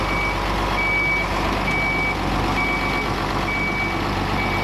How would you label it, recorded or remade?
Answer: recorded